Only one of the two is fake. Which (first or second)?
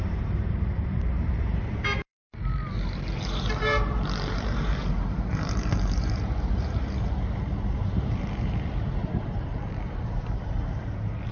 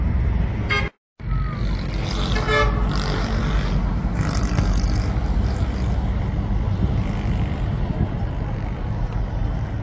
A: first